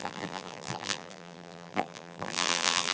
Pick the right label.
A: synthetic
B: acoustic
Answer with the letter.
A